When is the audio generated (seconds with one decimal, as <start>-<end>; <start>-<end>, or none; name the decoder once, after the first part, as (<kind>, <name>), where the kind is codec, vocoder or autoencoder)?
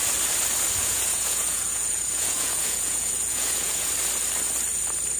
0.8-3.9 (vocoder, Vocos)